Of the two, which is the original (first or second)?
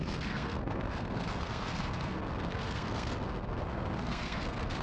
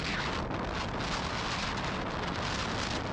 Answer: second